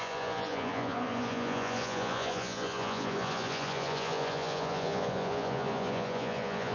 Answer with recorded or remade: remade